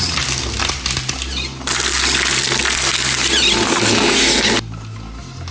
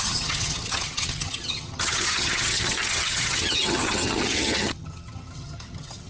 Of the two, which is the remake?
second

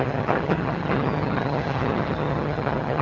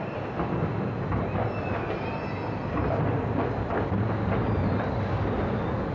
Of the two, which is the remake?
first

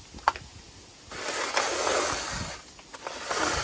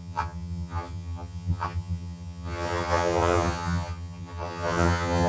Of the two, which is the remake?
second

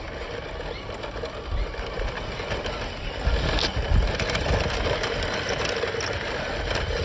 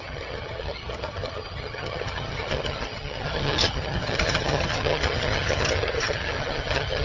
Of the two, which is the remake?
second